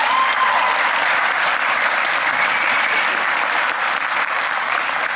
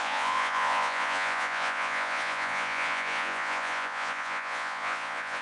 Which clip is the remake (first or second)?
second